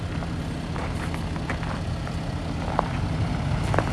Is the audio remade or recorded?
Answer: recorded